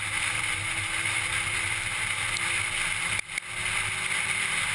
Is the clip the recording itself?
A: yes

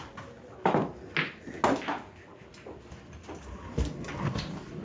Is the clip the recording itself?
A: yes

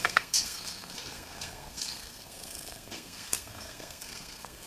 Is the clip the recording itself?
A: no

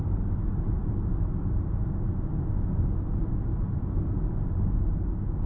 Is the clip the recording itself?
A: yes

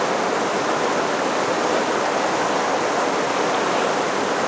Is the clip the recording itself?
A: yes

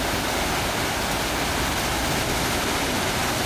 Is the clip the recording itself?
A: yes